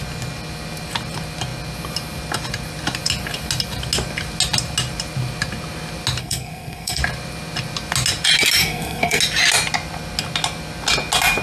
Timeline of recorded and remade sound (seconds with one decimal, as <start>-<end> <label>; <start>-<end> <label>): 0.0-6.2 recorded; 6.2-7.0 remade; 7.0-8.6 recorded; 8.6-9.2 remade; 9.2-11.4 recorded